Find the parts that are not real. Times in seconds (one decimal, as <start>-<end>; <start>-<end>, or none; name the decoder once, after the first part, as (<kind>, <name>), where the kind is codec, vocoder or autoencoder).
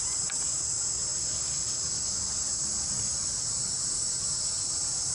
none